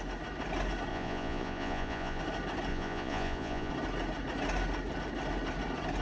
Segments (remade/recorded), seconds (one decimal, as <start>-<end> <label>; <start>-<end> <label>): 0.0-0.9 recorded; 0.9-2.2 remade; 2.2-2.7 recorded; 2.7-3.7 remade; 3.7-6.0 recorded